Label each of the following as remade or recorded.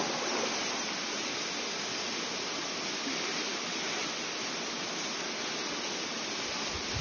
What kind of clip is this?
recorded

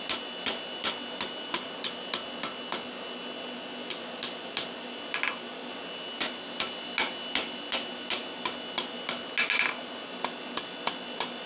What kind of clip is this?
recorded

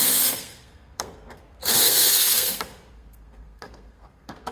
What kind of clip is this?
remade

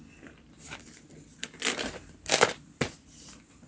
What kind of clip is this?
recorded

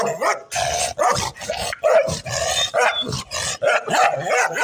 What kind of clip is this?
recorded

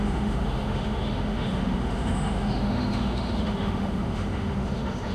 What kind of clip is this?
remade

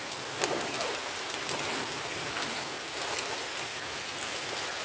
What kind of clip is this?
recorded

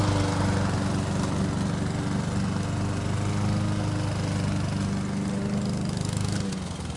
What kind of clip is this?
recorded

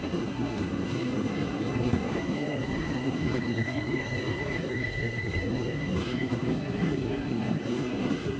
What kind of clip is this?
remade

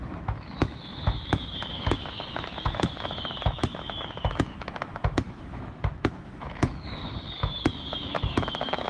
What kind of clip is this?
remade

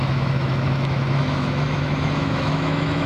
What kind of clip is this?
remade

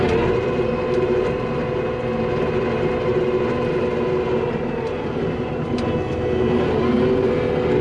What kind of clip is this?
recorded